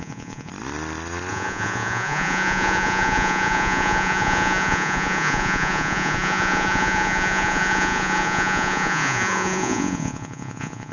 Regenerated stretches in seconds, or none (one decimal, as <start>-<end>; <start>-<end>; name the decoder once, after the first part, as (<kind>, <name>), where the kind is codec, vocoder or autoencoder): 0.0-0.5 (vocoder, Vocos); 1.3-10.9